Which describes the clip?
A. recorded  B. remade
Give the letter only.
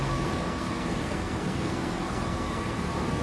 B